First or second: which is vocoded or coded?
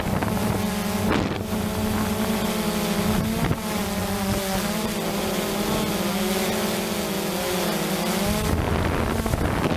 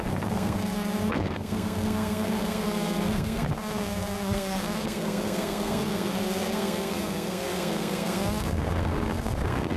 second